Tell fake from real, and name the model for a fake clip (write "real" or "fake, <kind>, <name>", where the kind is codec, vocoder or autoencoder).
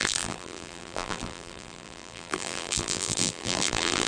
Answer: fake, vocoder, BigVGAN v2